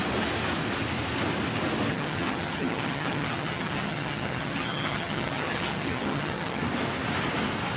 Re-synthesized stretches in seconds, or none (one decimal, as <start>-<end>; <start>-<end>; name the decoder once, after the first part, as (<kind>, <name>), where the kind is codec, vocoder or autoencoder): 1.9-6.6 (vocoder, HiFi-GAN)